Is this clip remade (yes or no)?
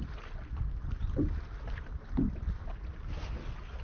no